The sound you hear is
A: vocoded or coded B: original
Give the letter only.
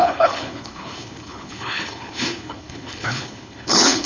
A